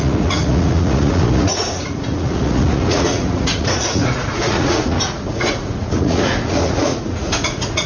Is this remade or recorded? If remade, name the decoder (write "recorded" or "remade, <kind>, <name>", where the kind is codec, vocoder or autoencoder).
remade, vocoder, Vocos